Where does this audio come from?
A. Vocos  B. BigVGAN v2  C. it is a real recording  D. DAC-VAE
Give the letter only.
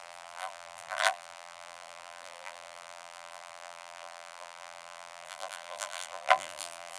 B